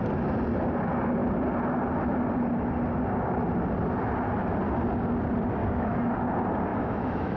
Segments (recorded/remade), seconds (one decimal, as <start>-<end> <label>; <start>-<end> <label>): 0.0-5.6 recorded; 5.6-6.2 remade; 6.2-6.7 recorded; 6.7-7.4 remade